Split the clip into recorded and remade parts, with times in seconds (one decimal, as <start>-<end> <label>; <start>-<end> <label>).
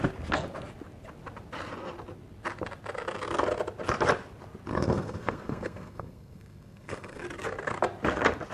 0.0-4.7 recorded; 4.7-7.2 remade; 7.2-8.5 recorded